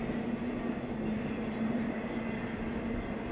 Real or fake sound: real